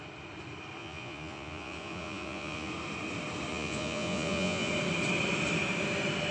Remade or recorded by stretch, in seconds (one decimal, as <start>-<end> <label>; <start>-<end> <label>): 0.0-0.8 recorded; 0.8-2.7 remade; 2.7-3.5 recorded; 3.5-4.7 remade; 4.7-6.3 recorded